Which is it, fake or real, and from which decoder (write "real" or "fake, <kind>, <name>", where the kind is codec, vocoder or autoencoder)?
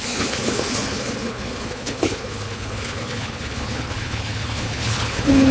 fake, codec, HILCodec